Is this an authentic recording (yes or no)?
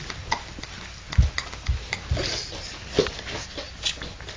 yes